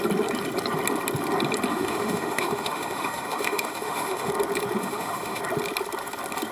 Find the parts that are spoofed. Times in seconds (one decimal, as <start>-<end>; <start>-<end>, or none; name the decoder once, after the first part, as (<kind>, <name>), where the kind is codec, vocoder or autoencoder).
1.7-4.3 (autoencoder, DAC-VAE); 4.8-5.4

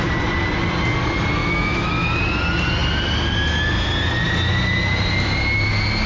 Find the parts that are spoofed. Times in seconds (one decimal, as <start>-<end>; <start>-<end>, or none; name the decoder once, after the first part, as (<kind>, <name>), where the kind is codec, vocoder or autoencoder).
1.4-2.1 (autoencoder, DAC-VAE)

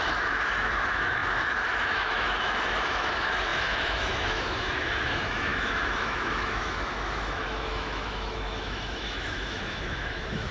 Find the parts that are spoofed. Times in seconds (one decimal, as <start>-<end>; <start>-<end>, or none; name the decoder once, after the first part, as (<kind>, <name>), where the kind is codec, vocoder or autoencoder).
0.0-10.5 (autoencoder, DAC-VAE)

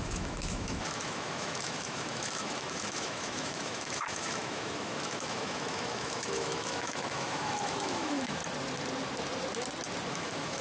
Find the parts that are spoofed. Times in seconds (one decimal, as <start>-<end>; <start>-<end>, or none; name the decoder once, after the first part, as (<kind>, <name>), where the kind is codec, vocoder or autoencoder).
0.0-8.4 (autoencoder, DAC-VAE); 10.1-10.6